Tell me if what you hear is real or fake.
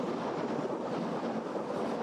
real